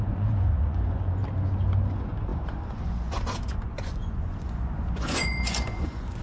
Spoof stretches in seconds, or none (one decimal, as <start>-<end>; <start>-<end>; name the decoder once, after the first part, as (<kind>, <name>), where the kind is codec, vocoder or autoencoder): 0.0-1.2 (vocoder, Vocos); 1.9-6.2